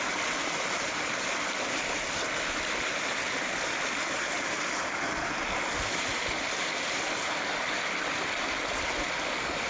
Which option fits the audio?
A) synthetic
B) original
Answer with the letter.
B